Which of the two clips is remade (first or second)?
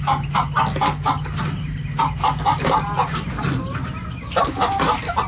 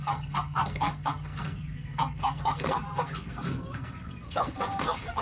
second